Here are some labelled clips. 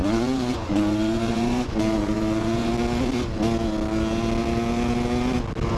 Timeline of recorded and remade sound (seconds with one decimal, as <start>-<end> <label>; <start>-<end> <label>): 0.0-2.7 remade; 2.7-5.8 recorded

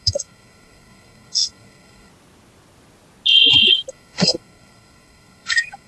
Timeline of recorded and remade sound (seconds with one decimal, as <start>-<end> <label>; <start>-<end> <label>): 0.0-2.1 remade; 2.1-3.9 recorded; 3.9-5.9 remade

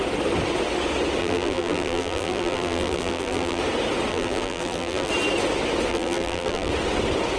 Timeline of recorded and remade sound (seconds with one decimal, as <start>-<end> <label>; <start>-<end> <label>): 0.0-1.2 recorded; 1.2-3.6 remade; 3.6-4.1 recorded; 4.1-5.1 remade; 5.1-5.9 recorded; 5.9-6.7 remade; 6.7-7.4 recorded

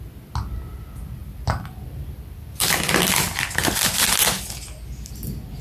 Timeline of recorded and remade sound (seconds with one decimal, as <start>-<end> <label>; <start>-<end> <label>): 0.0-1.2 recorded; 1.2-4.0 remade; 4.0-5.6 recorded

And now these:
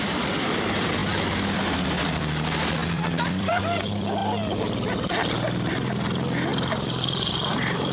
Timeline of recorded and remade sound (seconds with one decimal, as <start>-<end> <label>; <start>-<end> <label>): 0.0-7.9 remade

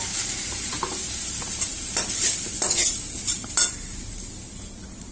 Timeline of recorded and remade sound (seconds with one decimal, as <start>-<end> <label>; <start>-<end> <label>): 0.0-5.1 remade

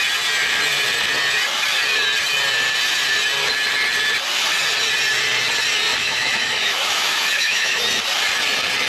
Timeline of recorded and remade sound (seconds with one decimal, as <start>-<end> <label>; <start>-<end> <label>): 0.0-6.0 recorded; 6.0-7.8 remade; 7.8-8.9 recorded

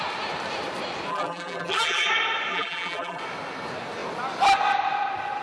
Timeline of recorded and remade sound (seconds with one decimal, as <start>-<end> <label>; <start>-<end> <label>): 0.0-1.1 recorded; 1.1-2.1 remade; 2.1-2.5 recorded; 2.5-3.2 remade; 3.2-5.4 recorded